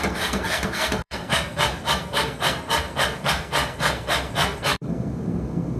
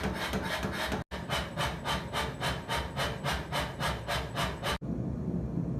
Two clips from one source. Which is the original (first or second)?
second